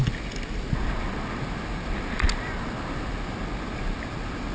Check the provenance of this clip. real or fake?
real